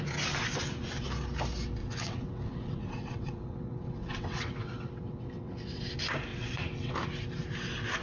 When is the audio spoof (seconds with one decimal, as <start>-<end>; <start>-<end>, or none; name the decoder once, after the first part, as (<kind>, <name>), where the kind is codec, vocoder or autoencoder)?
1.8-5.8 (vocoder, WaveNeXt); 6.3-6.9